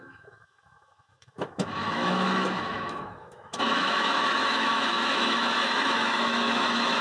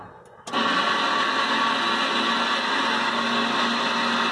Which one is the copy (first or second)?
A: first